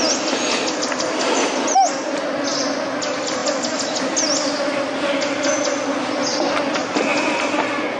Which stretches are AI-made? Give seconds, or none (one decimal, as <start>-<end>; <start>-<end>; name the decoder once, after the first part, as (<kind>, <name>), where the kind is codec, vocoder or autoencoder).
none